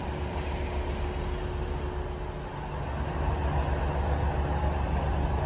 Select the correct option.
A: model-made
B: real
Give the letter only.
B